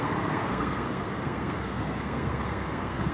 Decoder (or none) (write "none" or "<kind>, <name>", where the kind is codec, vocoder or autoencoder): codec, SNAC